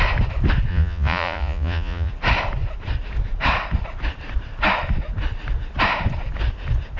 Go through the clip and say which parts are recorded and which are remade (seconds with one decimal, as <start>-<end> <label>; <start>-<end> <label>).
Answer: 0.0-0.7 recorded; 0.7-2.1 remade; 2.1-7.0 recorded